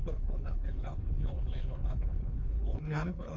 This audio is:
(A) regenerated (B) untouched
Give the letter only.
A